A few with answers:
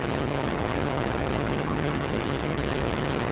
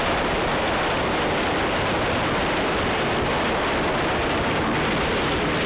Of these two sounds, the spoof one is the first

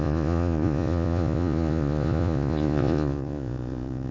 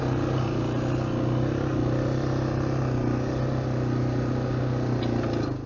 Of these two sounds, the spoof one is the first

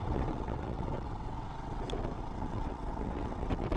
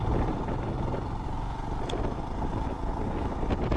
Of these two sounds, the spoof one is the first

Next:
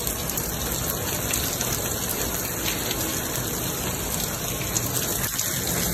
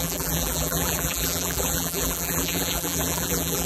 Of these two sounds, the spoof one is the second